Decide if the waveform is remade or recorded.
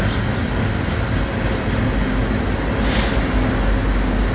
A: recorded